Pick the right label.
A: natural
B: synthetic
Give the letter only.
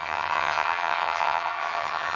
B